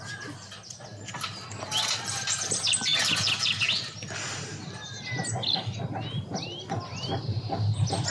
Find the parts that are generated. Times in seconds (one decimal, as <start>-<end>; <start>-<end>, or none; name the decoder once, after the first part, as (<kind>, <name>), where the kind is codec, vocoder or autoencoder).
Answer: none